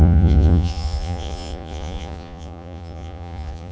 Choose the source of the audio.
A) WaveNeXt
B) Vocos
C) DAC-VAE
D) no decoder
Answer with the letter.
B